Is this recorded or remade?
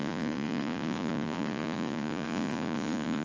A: remade